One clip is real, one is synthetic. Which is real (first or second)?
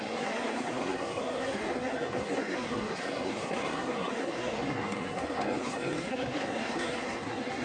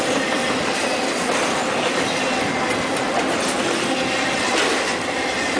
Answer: second